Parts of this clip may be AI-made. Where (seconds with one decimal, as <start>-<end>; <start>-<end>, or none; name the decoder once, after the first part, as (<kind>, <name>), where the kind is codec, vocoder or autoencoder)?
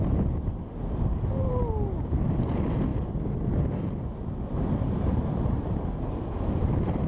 none